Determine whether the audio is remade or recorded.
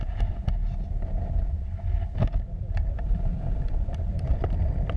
recorded